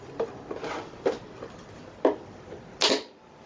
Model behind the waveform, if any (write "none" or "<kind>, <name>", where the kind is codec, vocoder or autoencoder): none